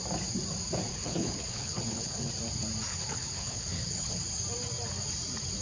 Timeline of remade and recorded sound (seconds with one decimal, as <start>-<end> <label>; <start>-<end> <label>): 0.0-0.9 recorded; 0.9-2.3 remade; 2.3-2.9 recorded; 2.9-4.2 remade; 4.2-5.6 recorded